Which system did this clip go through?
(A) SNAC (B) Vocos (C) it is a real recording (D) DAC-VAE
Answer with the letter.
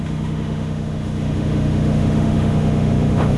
D